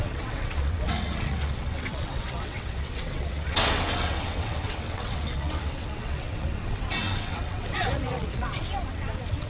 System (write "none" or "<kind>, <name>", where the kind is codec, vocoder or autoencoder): vocoder, WaveNeXt